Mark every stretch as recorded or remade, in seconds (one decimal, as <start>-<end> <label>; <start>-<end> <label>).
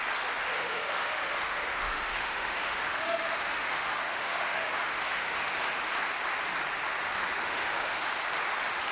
0.0-0.5 recorded; 0.5-5.4 remade; 5.4-7.4 recorded; 7.4-8.1 remade; 8.1-8.9 recorded